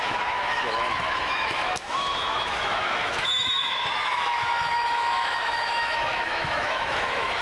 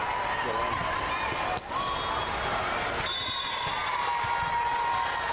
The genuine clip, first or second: second